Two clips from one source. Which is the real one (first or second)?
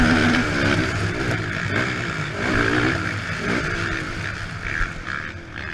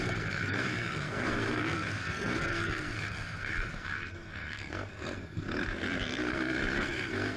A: first